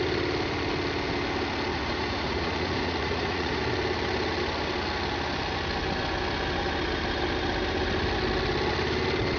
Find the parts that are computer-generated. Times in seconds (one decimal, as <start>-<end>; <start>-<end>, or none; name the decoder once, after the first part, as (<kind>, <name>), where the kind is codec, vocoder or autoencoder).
1.7-3.6 (vocoder, Vocos)